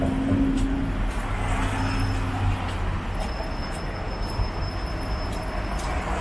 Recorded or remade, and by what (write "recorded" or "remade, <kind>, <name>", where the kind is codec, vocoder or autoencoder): recorded